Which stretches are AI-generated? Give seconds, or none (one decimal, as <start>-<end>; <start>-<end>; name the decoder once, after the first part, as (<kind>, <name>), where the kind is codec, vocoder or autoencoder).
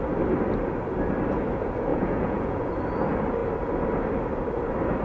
1.9-2.7 (vocoder, Vocos)